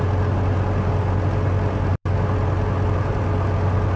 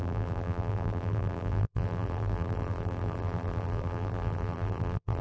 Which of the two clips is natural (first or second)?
first